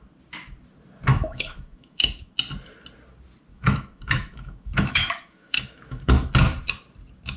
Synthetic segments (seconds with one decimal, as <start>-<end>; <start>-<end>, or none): 1.1-2.3; 3.5-6.3